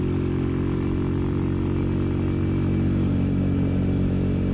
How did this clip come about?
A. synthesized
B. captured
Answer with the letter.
B